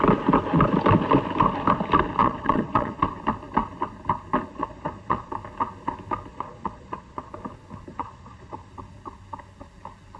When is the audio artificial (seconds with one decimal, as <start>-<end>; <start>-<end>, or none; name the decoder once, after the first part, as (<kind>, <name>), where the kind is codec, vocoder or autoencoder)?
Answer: 2.2-3.0 (vocoder, Vocos); 4.5-5.3; 6.3-7.3; 7.9-8.7